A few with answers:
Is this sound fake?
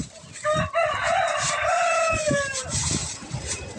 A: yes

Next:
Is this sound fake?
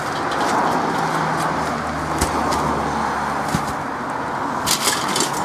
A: no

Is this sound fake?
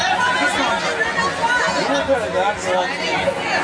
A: no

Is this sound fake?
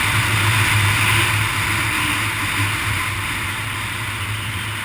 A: no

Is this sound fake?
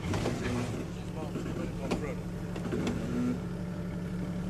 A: no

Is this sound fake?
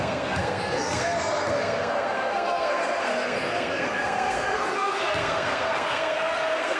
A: yes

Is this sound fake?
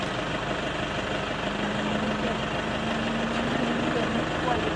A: no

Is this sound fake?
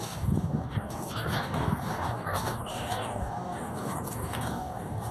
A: yes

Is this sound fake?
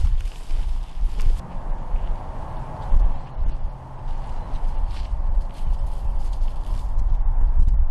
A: no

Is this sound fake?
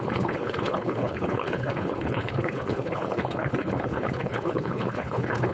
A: yes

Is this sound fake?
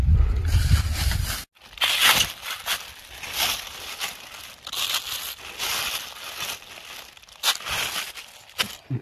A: no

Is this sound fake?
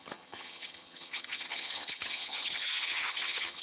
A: yes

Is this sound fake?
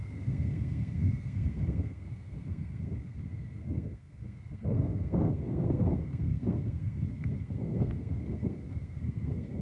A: yes